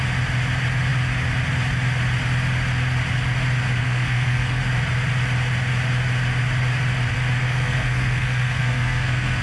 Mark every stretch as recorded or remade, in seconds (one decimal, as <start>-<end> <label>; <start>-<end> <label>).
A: 0.0-3.8 recorded; 3.8-4.6 remade; 4.6-7.4 recorded; 7.4-9.4 remade

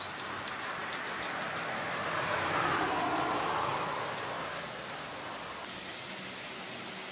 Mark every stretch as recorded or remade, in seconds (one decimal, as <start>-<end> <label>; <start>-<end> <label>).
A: 0.0-3.7 recorded; 3.7-5.6 remade; 5.6-7.1 recorded

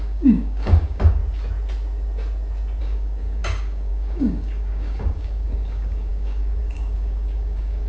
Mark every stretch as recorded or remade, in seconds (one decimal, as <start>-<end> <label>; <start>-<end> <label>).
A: 0.0-1.2 remade; 1.2-2.8 recorded; 2.8-7.9 remade

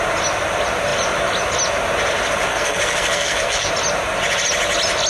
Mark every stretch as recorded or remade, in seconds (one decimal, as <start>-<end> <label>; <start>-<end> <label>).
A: 0.0-2.5 recorded; 2.5-3.7 remade; 3.7-5.1 recorded

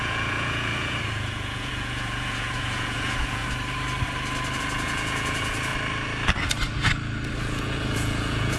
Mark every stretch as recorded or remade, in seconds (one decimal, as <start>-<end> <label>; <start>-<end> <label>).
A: 0.0-3.4 remade; 3.4-4.6 recorded; 4.6-5.7 remade; 5.7-7.4 recorded; 7.4-8.6 remade